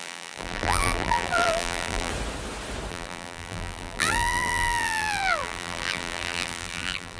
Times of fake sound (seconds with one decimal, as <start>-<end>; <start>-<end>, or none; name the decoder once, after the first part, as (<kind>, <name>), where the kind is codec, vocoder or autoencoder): 0.0-2.1 (vocoder, BigVGAN v2); 2.9-7.2